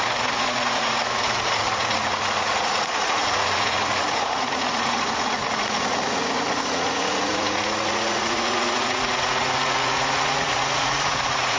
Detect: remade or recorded remade